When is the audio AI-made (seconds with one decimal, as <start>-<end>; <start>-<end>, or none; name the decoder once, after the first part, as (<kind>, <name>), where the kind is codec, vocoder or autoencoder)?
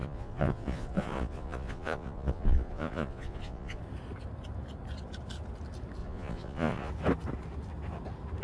0.0-3.8 (vocoder, Vocos); 6.0-6.9